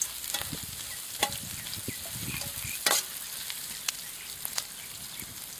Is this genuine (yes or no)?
yes